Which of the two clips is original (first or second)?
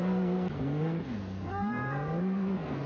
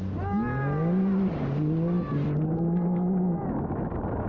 second